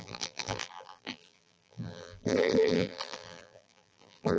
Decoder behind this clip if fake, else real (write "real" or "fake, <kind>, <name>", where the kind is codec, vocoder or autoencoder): fake, vocoder, BigVGAN v2